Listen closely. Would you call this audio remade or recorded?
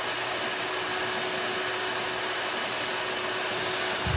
recorded